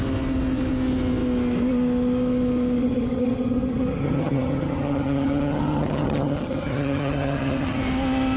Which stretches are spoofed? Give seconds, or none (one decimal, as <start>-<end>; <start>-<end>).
2.8-7.8